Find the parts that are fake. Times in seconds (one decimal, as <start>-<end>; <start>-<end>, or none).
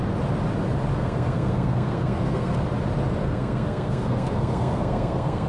0.9-2.6; 3.2-5.5